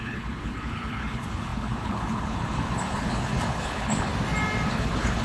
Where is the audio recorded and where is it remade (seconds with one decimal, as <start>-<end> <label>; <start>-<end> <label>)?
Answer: 0.0-4.1 remade; 4.1-4.7 recorded; 4.7-5.2 remade